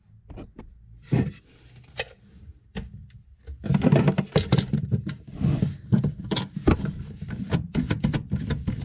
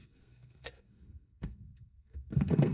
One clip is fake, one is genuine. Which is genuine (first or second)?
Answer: first